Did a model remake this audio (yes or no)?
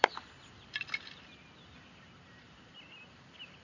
yes